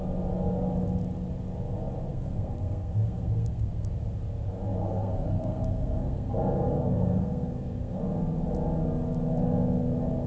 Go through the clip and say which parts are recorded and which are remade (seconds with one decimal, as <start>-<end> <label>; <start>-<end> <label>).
0.0-2.1 recorded; 2.1-3.9 remade; 3.9-4.8 recorded; 4.8-6.3 remade; 6.3-6.7 recorded; 6.7-8.0 remade; 8.0-10.3 recorded